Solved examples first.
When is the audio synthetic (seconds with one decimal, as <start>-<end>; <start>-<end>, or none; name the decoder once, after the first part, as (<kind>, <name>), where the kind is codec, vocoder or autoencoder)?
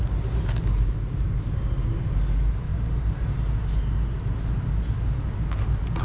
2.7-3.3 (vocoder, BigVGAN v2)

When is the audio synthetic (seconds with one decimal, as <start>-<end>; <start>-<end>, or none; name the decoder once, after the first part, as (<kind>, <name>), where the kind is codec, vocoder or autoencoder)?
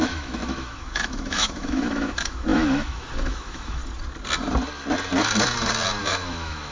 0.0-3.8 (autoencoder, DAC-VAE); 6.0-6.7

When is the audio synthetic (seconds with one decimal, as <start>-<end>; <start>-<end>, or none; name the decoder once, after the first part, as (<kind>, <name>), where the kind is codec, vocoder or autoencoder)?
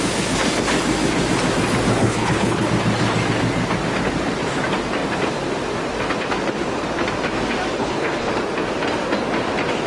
2.0-2.7 (codec, HILCodec); 7.8-8.3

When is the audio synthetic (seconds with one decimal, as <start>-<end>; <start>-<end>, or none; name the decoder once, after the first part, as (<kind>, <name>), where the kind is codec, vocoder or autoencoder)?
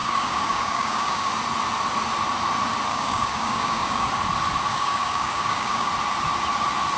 0.0-1.3 (codec, DAC); 2.9-4.1; 4.7-5.9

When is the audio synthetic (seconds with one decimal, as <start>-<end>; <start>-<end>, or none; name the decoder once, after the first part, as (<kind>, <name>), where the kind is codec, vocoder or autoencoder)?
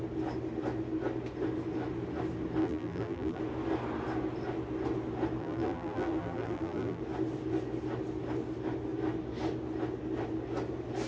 2.6-3.4 (vocoder, BigVGAN v2); 5.4-7.0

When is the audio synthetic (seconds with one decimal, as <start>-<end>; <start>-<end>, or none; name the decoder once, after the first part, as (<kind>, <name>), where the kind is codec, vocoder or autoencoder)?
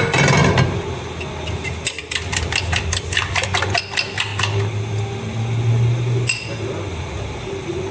0.4-3.8 (vocoder, BigVGAN v2); 4.3-5.3